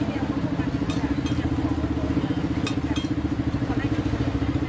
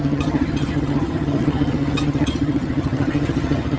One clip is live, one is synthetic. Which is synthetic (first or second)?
second